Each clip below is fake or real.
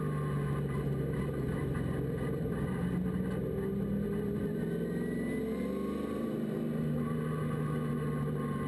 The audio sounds real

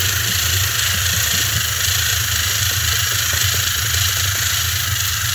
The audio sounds real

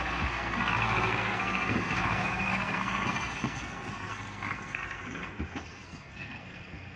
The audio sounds fake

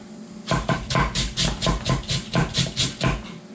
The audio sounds real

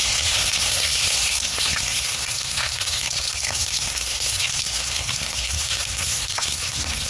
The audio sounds fake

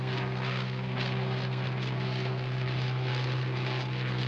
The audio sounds fake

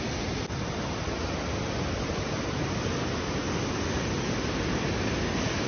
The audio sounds real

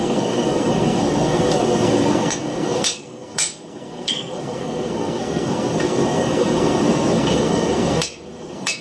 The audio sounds fake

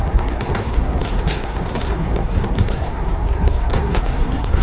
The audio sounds fake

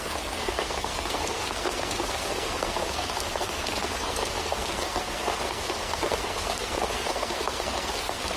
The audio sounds fake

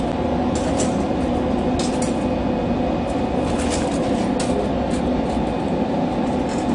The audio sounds real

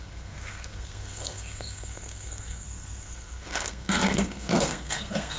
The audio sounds fake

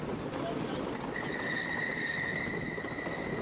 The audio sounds real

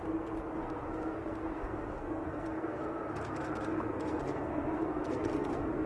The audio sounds fake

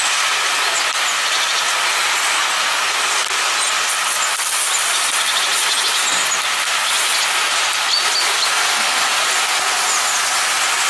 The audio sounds real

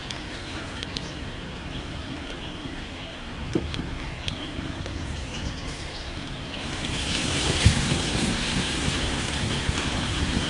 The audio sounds fake